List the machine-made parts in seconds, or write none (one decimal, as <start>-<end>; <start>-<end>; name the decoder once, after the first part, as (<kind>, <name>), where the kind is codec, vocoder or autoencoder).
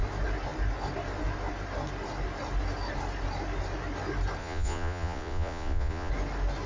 4.4-6.1 (vocoder, Vocos)